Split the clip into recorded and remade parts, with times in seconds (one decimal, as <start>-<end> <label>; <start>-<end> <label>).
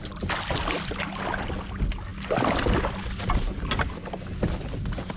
0.0-5.2 recorded